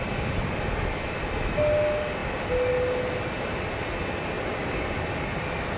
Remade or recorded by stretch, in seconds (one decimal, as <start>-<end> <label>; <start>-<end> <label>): 0.0-5.8 recorded